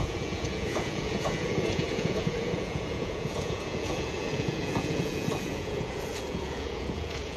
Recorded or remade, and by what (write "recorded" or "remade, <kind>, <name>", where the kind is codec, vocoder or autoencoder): remade, vocoder, Vocos